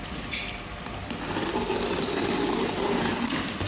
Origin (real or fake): real